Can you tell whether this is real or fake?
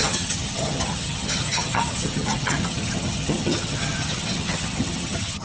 fake